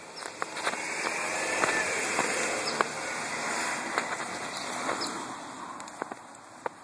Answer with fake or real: real